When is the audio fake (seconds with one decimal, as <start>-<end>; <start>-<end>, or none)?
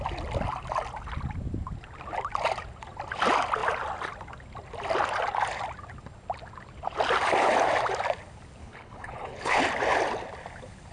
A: 8.6-9.6